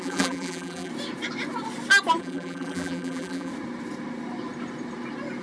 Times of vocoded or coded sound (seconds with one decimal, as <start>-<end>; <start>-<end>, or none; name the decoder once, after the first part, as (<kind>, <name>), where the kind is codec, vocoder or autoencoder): 0.0-0.9 (vocoder, BigVGAN v2); 2.2-3.5